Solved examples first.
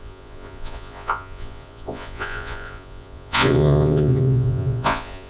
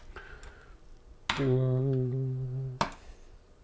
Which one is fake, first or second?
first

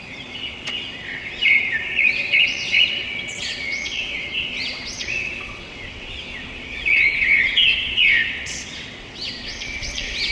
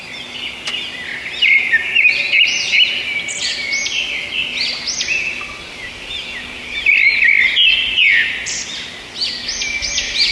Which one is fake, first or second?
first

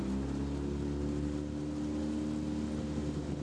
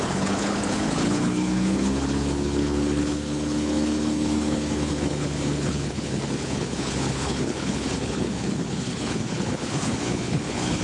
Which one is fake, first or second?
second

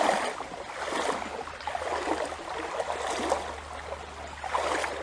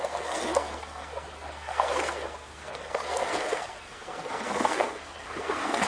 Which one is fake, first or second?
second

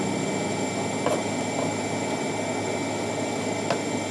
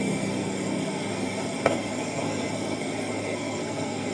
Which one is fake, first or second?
second